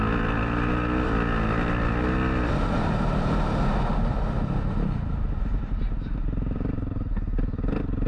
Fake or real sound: real